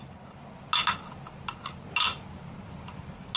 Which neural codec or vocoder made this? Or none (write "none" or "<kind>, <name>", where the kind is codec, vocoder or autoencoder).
none